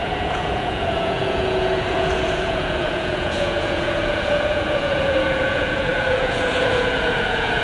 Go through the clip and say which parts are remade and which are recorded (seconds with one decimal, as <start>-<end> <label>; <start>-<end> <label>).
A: 0.0-7.6 remade